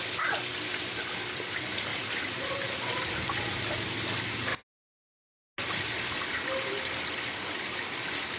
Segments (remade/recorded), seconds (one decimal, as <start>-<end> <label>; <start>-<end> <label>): 0.0-1.9 recorded; 1.9-3.2 remade; 3.2-8.4 recorded